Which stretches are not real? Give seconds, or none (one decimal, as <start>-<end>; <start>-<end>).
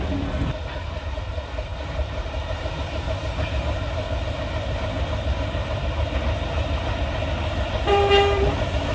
1.7-4.8